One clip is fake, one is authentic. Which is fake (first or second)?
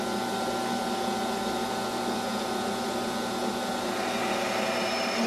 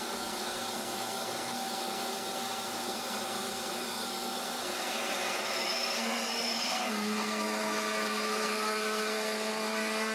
second